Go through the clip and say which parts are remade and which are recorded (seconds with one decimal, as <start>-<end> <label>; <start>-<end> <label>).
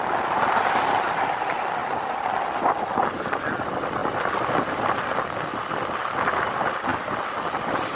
0.0-8.0 recorded